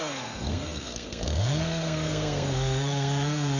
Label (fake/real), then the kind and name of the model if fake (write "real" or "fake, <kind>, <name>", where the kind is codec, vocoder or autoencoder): fake, codec, SNAC